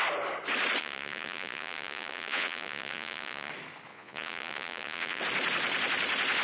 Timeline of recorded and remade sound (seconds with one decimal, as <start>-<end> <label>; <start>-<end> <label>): 0.0-0.8 recorded; 0.8-3.5 remade; 3.5-3.9 recorded; 3.9-5.2 remade; 5.2-6.4 recorded